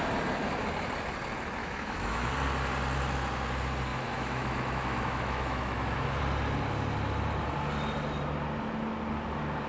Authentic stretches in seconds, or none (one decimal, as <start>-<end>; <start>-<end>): 0.0-1.6; 2.3-3.9; 6.2-9.7